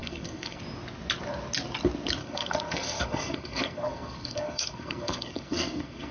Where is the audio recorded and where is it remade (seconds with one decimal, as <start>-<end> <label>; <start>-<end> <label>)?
0.0-0.6 remade; 0.6-2.2 recorded; 2.2-6.1 remade